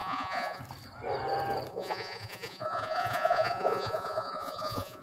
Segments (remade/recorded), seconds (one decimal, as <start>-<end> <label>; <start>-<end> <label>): 0.0-0.6 remade; 0.6-1.7 recorded; 1.7-5.0 remade